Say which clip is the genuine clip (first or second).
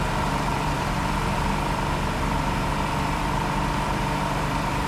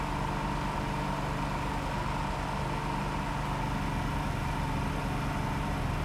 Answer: second